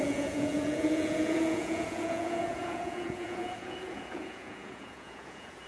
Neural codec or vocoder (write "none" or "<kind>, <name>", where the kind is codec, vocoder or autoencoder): vocoder, Vocos